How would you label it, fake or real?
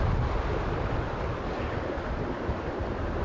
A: real